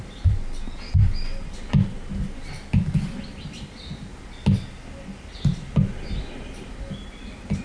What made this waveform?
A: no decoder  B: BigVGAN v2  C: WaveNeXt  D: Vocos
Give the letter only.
A